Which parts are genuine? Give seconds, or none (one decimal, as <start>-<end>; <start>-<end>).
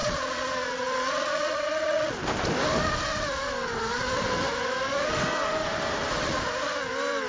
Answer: 2.1-7.3